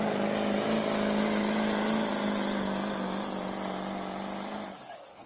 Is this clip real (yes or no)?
yes